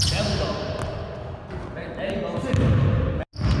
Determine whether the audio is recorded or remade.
recorded